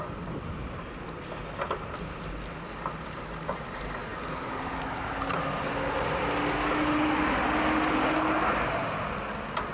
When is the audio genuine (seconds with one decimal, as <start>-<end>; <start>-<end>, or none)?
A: 0.0-9.7

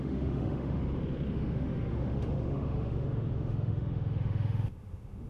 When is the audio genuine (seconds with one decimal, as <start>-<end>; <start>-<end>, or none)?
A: 0.8-1.3

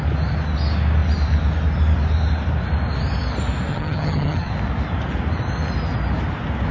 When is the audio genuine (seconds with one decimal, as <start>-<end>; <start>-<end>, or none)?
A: 0.0-3.7; 4.5-6.7

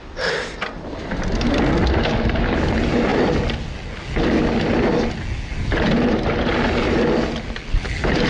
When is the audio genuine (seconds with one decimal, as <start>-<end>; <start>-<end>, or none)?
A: 0.0-8.3

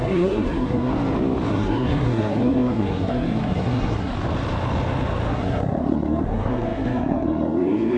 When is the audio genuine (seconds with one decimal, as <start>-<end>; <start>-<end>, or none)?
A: 0.9-1.5; 4.1-5.3